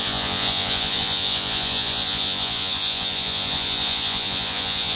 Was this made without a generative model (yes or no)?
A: no